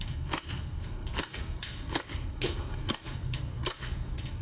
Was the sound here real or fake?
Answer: fake